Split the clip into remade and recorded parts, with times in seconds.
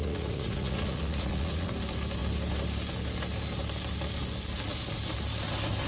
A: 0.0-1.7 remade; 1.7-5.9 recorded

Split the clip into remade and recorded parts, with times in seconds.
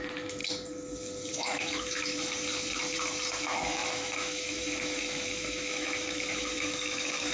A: 0.0-0.4 remade; 0.4-1.3 recorded; 1.3-2.1 remade; 2.1-3.3 recorded; 3.3-7.3 remade